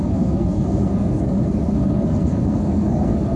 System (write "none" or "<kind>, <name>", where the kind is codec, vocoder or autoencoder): codec, SNAC